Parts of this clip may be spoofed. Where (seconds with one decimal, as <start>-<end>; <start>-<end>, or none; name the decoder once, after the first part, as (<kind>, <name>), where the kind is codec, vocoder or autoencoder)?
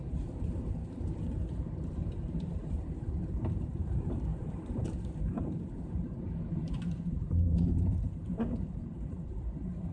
0.0-9.9 (vocoder, BigVGAN v2)